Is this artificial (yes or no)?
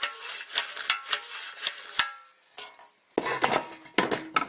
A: no